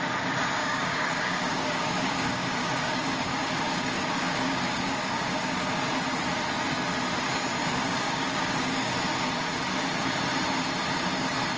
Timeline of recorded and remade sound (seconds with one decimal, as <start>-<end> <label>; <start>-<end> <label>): 0.0-0.6 recorded; 0.6-5.8 remade; 5.8-7.6 recorded; 7.6-8.9 remade; 8.9-11.6 recorded

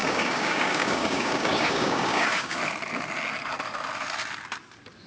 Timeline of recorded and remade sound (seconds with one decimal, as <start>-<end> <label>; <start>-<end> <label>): 0.0-2.6 remade; 2.6-5.1 recorded

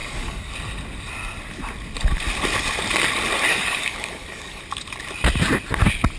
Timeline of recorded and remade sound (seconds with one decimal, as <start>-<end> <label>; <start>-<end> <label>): 0.0-0.5 remade; 0.5-3.5 recorded; 3.5-4.6 remade; 4.6-6.2 recorded

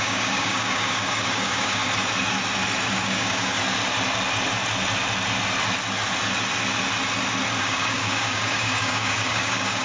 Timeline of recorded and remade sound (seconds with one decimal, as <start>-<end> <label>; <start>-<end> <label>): 0.0-1.8 remade; 1.8-2.9 recorded; 2.9-3.6 remade; 3.6-7.6 recorded; 7.6-9.8 remade

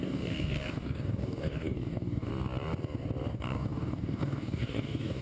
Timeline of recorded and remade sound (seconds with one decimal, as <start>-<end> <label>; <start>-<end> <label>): 0.0-2.3 remade; 2.3-3.3 recorded; 3.3-5.2 remade

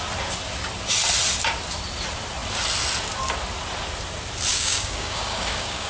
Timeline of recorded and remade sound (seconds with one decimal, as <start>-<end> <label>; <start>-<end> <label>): 0.0-4.5 recorded; 4.5-5.9 remade